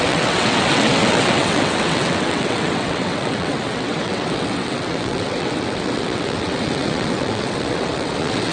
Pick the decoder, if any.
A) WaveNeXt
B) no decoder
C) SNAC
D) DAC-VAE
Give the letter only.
A